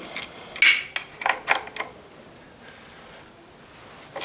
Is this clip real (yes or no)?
yes